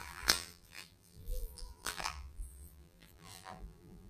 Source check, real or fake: fake